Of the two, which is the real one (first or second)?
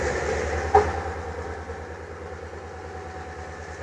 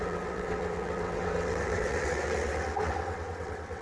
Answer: first